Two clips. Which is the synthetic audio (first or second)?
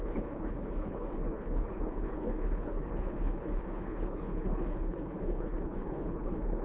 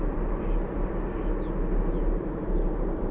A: first